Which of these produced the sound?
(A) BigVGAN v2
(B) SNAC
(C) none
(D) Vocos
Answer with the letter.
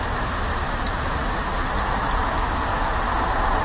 A